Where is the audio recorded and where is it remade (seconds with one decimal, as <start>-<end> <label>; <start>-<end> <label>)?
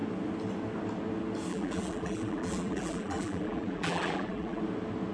0.0-1.5 recorded; 1.5-4.6 remade; 4.6-5.1 recorded